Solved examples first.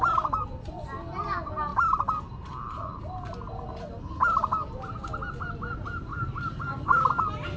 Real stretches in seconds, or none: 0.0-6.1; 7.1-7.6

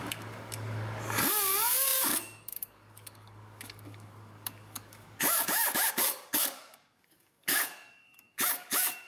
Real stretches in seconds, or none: none

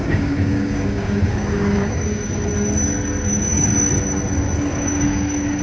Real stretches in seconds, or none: 2.5-3.2; 3.7-4.7

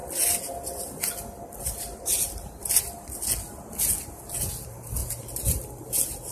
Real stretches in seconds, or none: 0.0-6.3

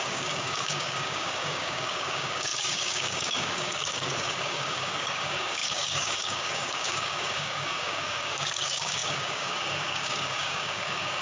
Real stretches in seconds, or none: none

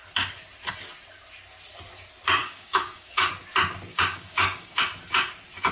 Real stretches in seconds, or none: 0.0-2.4; 3.3-3.9; 4.8-5.7

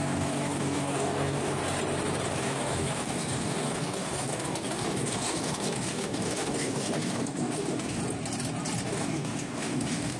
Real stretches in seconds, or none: 1.6-2.3; 8.0-8.8

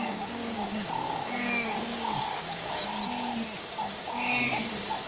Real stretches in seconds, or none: 2.9-3.6